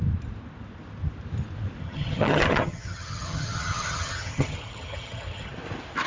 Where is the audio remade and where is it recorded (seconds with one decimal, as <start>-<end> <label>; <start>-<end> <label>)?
0.0-1.8 recorded; 1.8-5.5 remade; 5.5-6.1 recorded